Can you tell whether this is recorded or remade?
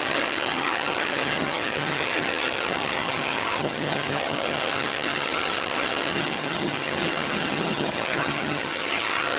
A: remade